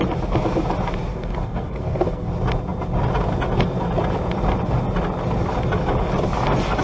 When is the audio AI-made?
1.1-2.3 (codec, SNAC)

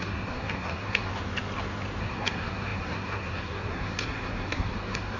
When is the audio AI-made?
0.0-1.1 (codec, SNAC); 2.0-5.2

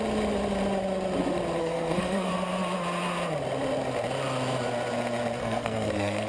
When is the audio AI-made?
1.6-2.3 (codec, SNAC); 5.4-6.3